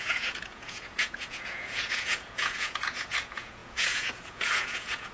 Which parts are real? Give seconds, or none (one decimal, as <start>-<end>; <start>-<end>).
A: none